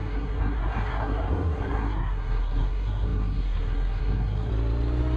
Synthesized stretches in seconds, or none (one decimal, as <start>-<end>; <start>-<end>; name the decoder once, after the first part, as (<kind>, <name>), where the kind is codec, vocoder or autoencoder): 0.0-4.5 (codec, SNAC)